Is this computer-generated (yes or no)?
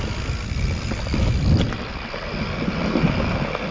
no